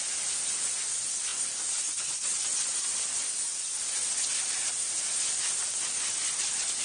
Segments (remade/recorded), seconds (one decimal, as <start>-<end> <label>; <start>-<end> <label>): 0.0-6.8 recorded